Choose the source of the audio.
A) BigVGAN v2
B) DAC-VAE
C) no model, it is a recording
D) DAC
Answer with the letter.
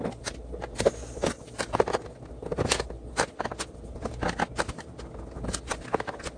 C